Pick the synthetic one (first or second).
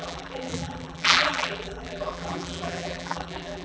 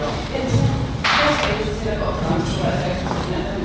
first